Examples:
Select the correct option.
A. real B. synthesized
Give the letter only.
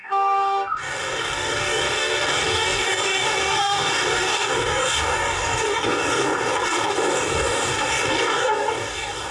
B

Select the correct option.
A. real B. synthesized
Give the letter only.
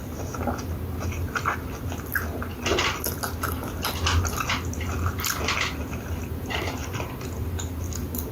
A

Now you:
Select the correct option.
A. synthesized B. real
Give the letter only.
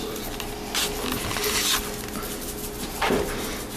B